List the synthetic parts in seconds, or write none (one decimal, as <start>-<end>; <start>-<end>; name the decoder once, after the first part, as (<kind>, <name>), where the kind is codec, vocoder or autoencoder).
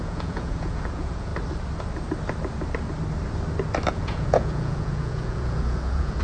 0.0-1.3 (vocoder, Vocos); 3.9-6.2